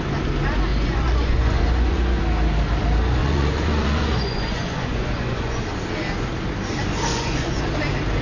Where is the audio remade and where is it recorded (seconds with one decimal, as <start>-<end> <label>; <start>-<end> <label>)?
0.0-0.7 recorded; 0.7-2.2 remade; 2.2-3.2 recorded; 3.2-5.6 remade; 5.6-7.1 recorded; 7.1-7.6 remade; 7.6-8.2 recorded